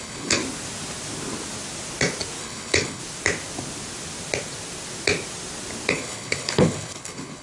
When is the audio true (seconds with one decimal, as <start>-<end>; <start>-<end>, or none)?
0.4-2.4; 3.0-5.9